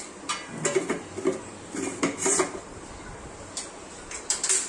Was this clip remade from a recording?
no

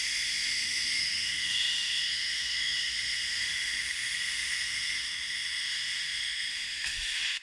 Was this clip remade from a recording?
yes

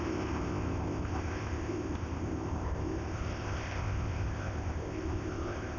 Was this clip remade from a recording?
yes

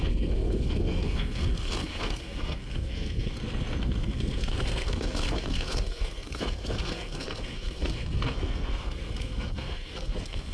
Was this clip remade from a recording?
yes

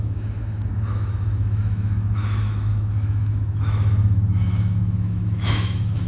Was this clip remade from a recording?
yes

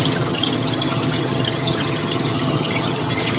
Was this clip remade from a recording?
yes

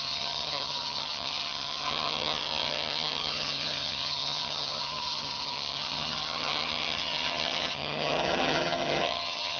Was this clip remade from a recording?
yes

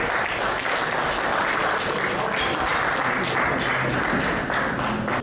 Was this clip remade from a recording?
no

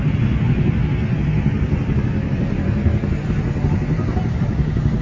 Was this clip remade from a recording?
no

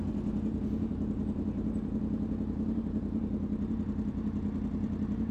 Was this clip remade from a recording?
no